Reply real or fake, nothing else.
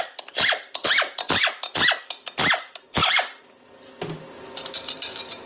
real